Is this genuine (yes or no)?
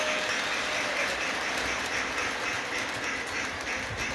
yes